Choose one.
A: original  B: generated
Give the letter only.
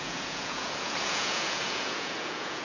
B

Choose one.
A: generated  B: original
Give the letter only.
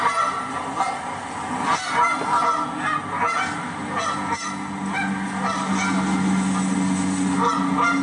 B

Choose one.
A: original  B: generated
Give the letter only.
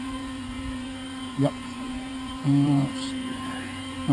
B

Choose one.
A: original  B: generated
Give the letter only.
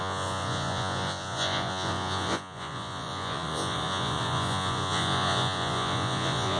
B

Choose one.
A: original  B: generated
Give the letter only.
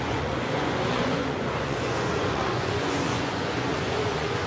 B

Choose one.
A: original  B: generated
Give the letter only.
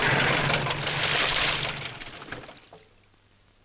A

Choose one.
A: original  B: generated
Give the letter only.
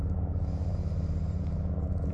A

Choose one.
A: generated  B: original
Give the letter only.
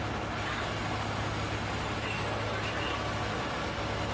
B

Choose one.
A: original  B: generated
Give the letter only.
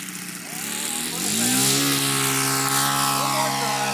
A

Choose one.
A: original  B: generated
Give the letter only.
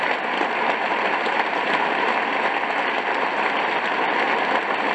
A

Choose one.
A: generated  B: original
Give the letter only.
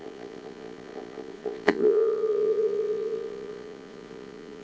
A